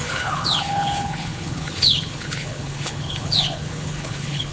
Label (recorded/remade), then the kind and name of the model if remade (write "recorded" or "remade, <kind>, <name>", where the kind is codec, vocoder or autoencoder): remade, codec, HILCodec